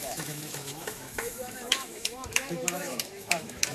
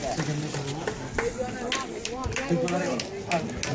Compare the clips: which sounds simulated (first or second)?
first